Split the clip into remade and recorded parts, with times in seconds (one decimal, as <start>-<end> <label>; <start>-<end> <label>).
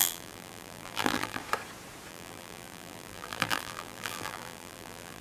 0.0-1.4 remade; 1.4-2.1 recorded; 2.1-5.2 remade